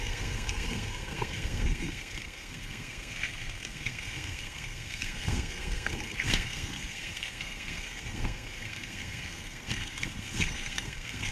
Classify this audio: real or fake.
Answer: fake